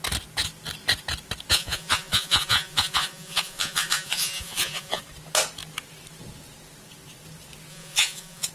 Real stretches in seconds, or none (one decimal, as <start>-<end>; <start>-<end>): 0.0-1.5; 5.0-7.7